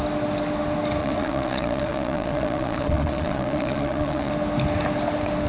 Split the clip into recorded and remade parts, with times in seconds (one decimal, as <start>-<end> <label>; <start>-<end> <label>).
0.0-1.0 recorded; 1.0-4.3 remade; 4.3-5.5 recorded